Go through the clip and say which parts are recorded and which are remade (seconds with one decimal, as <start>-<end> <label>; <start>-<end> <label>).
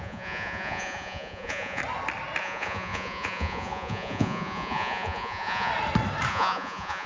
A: 0.0-1.8 remade; 1.8-2.4 recorded; 2.4-5.7 remade; 5.7-6.3 recorded; 6.3-7.1 remade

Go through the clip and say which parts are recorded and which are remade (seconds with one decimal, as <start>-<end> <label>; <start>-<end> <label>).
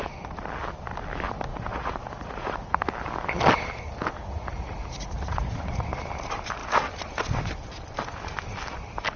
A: 0.0-1.5 recorded; 1.5-2.8 remade; 2.8-4.2 recorded; 4.2-6.1 remade; 6.1-9.2 recorded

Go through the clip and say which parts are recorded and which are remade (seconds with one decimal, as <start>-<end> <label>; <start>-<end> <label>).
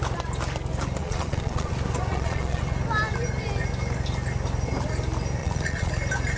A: 0.0-1.0 recorded; 1.0-1.7 remade; 1.7-2.1 recorded; 2.1-2.6 remade; 2.6-5.4 recorded; 5.4-5.9 remade; 5.9-6.4 recorded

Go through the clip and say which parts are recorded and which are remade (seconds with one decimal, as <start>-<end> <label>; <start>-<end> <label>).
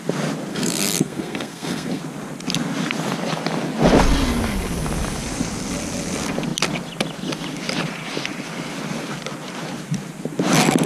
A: 0.0-0.5 recorded; 0.5-2.0 remade; 2.0-10.9 recorded